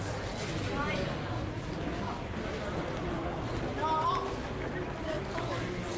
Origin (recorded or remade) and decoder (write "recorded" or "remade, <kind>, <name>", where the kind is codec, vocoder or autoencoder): recorded